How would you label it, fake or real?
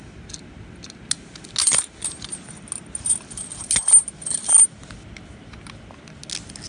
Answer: real